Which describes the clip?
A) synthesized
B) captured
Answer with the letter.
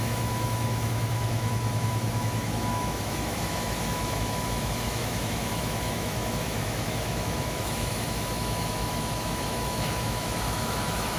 A